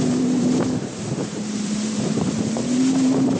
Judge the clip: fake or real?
fake